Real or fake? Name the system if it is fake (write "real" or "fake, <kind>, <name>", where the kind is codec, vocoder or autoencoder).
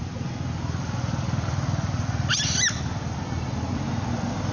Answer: real